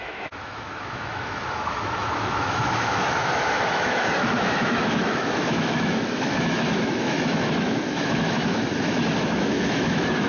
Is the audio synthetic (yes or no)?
yes